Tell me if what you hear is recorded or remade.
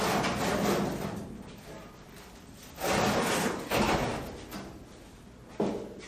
recorded